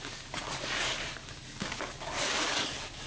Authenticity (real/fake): fake